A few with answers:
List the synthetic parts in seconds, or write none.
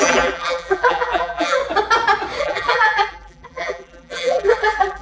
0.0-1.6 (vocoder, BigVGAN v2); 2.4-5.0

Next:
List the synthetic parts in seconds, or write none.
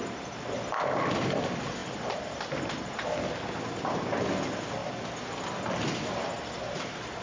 none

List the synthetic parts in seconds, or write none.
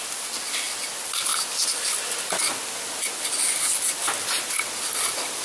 none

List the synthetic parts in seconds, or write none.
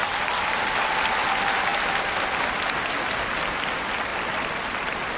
1.7-2.4 (vocoder, BigVGAN v2); 4.1-4.7